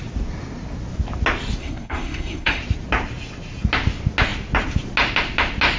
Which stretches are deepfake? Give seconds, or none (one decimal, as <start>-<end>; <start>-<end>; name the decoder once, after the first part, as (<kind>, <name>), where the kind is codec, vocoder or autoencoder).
1.6-2.6 (codec, SNAC)